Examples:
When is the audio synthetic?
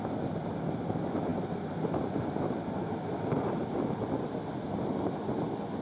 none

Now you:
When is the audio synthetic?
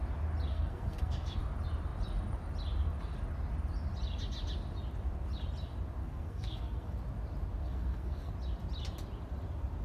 0.5-1.4 (codec, SNAC); 6.0-7.0; 7.6-8.3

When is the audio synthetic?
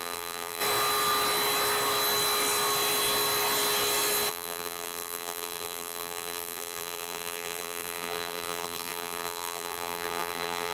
0.0-0.6 (vocoder, BigVGAN v2); 4.3-10.7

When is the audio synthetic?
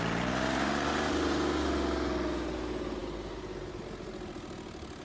none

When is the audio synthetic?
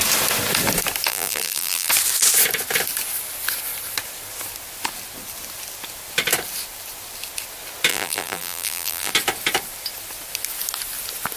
1.1-1.9 (vocoder, BigVGAN v2); 7.9-9.1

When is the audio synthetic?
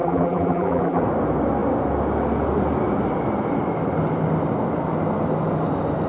0.0-1.0 (vocoder, BigVGAN v2)